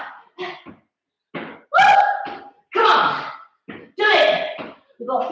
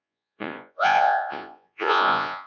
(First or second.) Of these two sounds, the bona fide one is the first